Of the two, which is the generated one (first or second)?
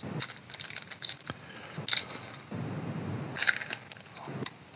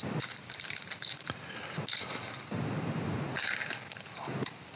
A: second